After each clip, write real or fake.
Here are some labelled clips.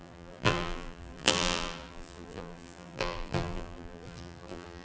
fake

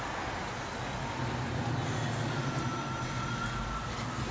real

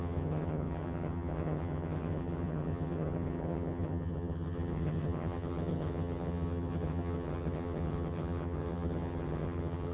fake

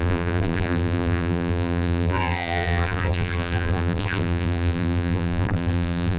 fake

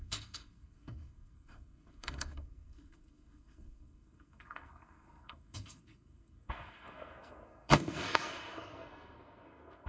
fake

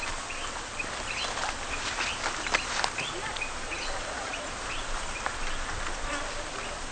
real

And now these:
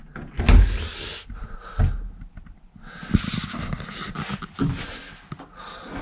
real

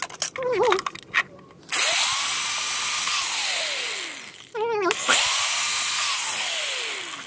real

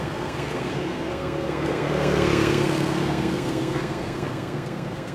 fake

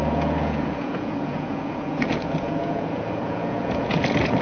fake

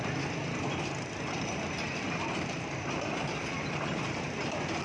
real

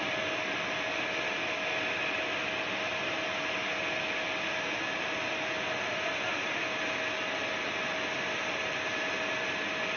real